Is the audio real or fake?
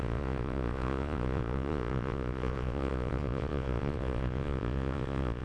fake